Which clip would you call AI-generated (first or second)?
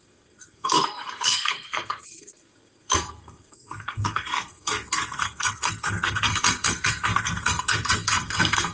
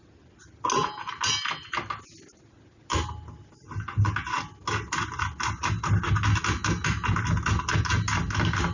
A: first